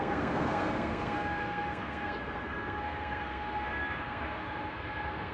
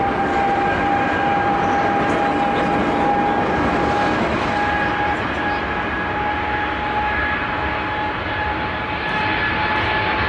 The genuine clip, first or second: second